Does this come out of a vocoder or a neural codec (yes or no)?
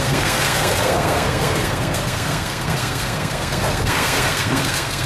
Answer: yes